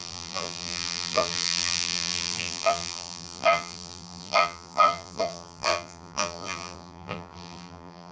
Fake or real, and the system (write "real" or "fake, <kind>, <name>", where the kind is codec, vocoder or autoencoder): fake, vocoder, BigVGAN v2